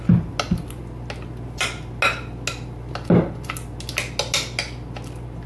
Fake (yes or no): no